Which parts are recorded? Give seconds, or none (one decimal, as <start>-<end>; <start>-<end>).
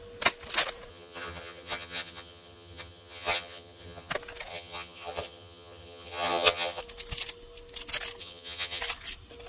0.0-0.9; 4.1-4.5; 6.8-8.2; 8.8-9.5